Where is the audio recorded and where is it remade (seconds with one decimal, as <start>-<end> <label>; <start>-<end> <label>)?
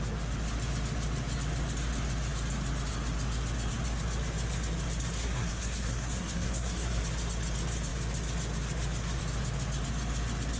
0.0-5.2 recorded; 5.2-7.0 remade; 7.0-10.6 recorded